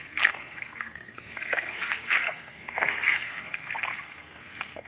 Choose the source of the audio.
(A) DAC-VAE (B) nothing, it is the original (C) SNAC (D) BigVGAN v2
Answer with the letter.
C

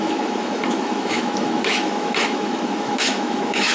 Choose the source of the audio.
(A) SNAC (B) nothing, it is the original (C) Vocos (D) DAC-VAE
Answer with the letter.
D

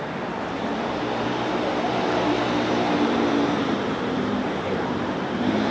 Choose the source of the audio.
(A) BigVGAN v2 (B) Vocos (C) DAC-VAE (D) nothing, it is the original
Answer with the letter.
A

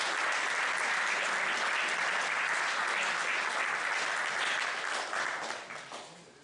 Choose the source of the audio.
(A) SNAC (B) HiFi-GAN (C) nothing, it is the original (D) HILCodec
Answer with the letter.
C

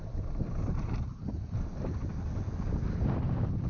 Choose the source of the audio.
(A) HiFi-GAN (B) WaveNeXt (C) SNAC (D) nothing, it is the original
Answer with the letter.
D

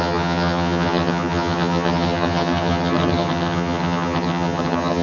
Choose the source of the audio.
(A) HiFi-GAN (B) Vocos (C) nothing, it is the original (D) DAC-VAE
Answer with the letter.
A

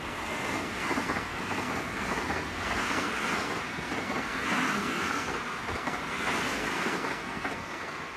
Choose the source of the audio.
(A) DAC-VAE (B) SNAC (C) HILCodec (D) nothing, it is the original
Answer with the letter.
B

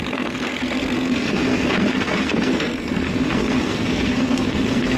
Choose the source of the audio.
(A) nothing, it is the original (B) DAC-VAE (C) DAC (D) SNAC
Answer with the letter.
D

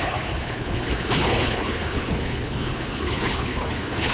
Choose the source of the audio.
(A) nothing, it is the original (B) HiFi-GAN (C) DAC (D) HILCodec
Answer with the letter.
D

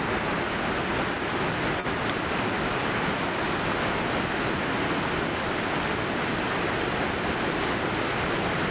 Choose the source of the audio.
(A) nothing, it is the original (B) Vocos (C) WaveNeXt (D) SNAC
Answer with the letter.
A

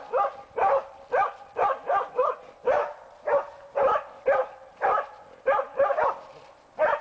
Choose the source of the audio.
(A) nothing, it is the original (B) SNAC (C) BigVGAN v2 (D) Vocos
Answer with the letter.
A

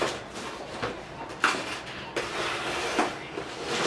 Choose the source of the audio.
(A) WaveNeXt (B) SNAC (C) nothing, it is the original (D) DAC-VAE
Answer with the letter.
C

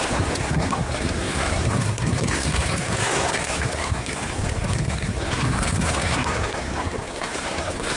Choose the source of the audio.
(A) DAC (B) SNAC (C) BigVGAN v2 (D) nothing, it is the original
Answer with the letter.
B